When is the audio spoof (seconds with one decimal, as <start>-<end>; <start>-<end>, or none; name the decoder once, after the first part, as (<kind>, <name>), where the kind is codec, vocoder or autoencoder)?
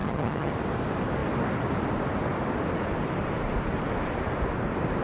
0.0-0.5 (vocoder, HiFi-GAN)